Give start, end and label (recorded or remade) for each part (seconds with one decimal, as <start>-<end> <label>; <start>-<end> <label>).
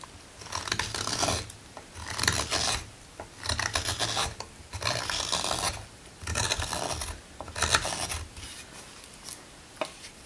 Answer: 0.0-10.3 recorded